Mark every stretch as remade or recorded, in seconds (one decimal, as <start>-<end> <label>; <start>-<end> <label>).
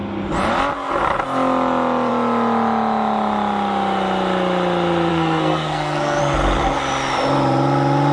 0.0-5.1 recorded; 5.1-6.2 remade; 6.2-8.1 recorded